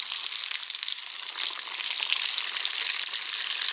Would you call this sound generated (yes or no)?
no